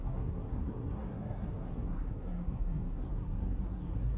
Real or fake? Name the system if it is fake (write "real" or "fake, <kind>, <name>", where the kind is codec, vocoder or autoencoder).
fake, codec, SNAC